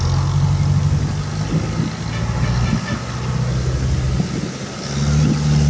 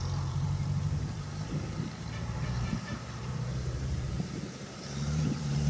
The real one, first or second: first